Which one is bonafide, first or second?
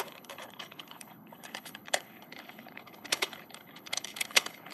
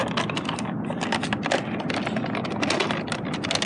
second